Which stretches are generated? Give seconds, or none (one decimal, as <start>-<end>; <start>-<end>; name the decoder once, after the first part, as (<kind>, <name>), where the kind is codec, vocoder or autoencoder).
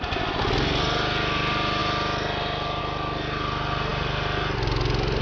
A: none